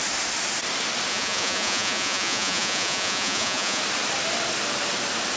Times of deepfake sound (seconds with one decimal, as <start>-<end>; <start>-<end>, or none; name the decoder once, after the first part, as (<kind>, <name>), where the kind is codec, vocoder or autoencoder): 1.1-3.8 (vocoder, Vocos)